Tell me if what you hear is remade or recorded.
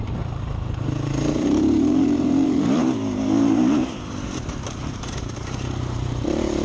remade